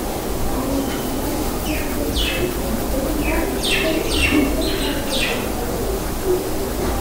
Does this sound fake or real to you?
real